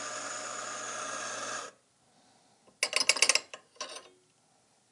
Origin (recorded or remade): recorded